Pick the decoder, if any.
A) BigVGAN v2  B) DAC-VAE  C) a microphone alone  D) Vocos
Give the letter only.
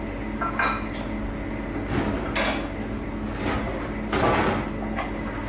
C